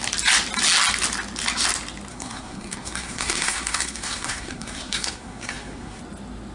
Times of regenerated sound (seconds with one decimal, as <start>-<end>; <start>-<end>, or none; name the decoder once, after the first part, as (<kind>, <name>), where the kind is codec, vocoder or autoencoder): 2.1-6.0 (codec, SNAC)